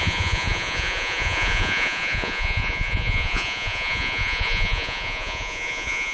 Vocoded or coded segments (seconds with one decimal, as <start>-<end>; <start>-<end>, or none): 0.0-6.1